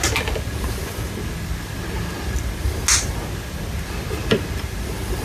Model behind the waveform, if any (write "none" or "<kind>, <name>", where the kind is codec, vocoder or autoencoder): none